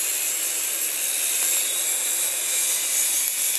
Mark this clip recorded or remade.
recorded